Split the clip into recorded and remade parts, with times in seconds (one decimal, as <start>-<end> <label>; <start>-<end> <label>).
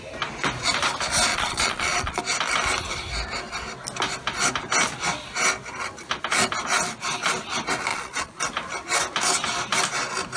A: 0.0-1.3 recorded; 1.3-2.2 remade; 2.2-7.9 recorded; 7.9-8.4 remade; 8.4-10.4 recorded